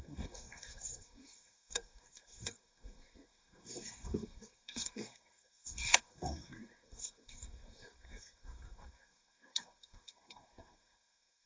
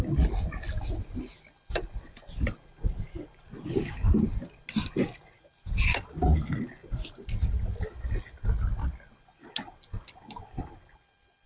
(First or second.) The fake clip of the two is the first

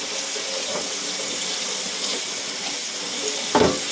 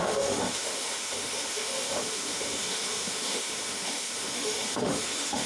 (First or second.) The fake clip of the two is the second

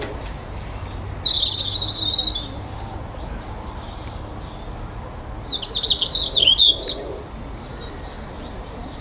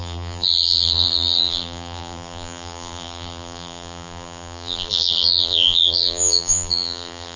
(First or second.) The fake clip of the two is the second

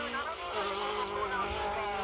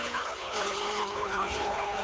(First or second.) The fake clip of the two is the second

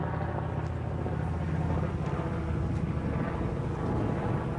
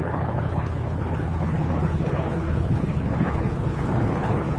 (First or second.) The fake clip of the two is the second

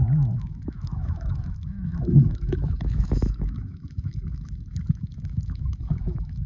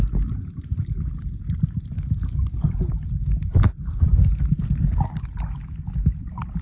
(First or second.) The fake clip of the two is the first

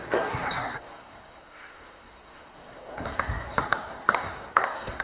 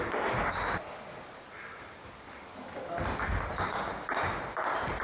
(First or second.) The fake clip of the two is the first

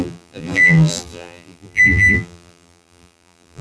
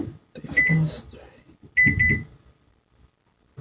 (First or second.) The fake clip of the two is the first